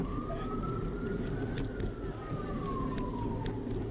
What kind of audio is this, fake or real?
real